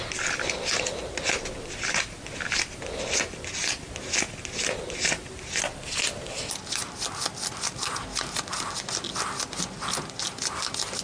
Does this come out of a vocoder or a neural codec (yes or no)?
no